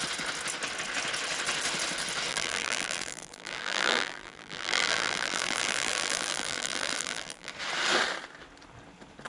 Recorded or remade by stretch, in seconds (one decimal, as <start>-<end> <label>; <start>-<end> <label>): 0.0-2.3 recorded; 2.3-7.5 remade; 7.5-9.3 recorded